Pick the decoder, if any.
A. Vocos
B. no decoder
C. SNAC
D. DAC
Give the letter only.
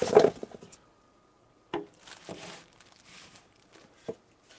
B